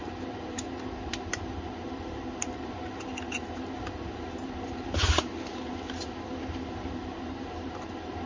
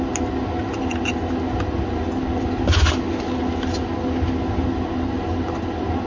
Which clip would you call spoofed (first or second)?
first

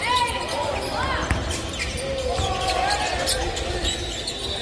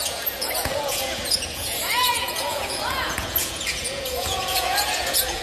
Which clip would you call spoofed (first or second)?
second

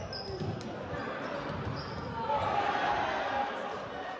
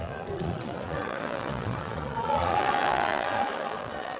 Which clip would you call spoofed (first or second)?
second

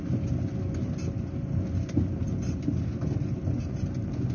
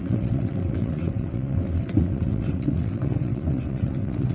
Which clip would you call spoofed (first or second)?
second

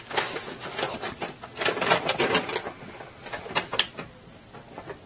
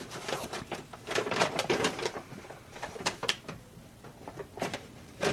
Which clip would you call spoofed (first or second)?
second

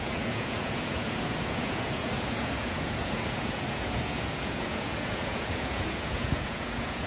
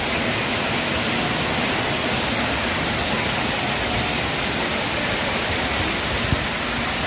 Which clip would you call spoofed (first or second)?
first